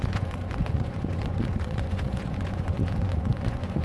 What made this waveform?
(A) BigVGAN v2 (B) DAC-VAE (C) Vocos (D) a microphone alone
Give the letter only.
C